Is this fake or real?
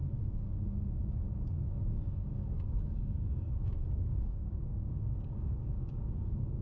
fake